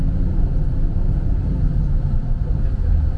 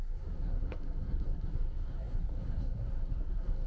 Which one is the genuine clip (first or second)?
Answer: first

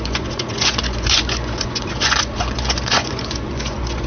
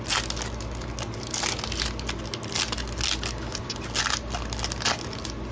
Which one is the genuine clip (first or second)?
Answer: second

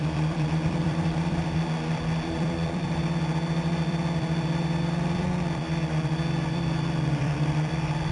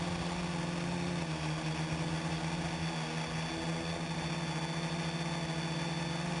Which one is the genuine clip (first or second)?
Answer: second